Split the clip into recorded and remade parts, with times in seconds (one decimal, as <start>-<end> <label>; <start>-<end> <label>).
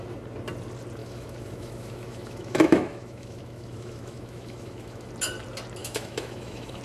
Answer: 0.0-1.0 recorded; 1.0-5.1 remade; 5.1-5.8 recorded; 5.8-6.8 remade